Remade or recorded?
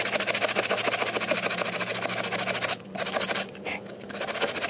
recorded